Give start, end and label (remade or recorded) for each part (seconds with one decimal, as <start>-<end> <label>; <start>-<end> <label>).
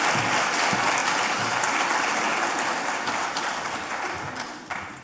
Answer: 0.0-3.2 recorded; 3.2-3.9 remade; 3.9-5.0 recorded